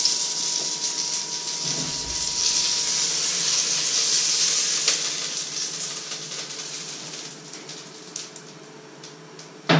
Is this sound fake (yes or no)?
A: no